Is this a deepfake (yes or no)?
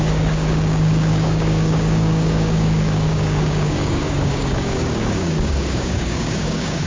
yes